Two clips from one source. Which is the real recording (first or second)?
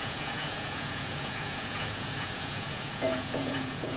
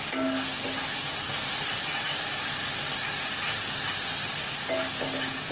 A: second